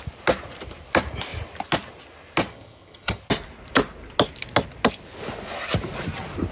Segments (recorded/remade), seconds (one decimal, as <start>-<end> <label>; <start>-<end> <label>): 0.0-2.5 recorded; 2.5-3.2 remade; 3.2-6.5 recorded